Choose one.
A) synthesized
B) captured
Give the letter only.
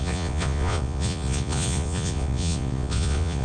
A